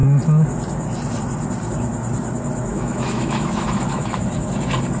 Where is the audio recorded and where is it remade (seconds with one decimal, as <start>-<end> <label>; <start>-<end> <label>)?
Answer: 0.0-2.7 recorded; 2.7-4.2 remade; 4.2-5.0 recorded